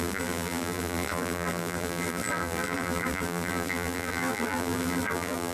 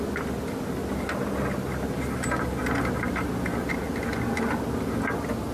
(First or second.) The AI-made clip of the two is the first